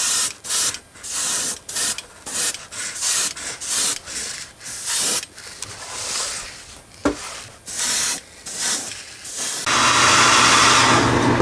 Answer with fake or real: real